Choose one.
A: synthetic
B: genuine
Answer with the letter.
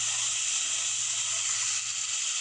B